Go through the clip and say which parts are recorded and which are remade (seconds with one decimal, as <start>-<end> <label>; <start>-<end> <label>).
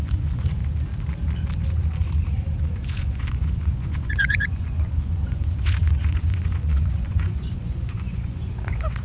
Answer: 0.0-0.6 remade; 0.6-2.6 recorded; 2.6-9.0 remade